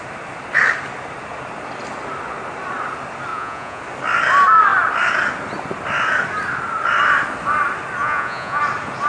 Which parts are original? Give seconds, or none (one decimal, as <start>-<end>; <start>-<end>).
0.0-3.3; 3.8-8.0; 8.6-9.1